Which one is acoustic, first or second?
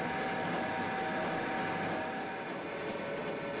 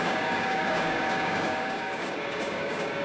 first